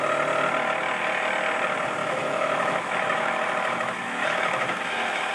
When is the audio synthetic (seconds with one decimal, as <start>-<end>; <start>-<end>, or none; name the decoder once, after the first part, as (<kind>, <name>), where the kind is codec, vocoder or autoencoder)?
2.0-5.3 (autoencoder, DAC-VAE)